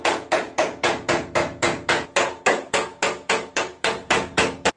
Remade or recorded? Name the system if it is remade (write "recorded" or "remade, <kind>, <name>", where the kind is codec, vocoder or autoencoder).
remade, vocoder, Vocos